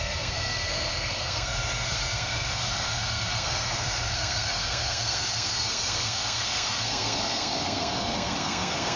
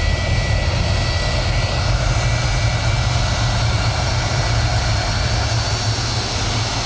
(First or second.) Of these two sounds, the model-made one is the first